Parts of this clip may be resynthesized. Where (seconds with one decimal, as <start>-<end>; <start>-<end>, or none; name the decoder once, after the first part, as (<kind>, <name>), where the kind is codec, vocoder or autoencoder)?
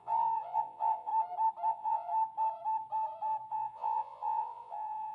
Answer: 0.0-1.1 (vocoder, Vocos); 1.7-2.1; 3.5-5.1